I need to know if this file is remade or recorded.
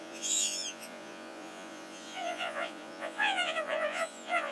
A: remade